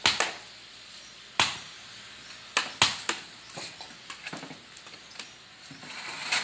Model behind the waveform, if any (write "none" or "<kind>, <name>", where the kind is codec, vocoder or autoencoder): none